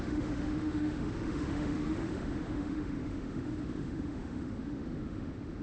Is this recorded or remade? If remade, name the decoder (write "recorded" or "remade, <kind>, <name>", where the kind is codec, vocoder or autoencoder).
remade, autoencoder, DAC-VAE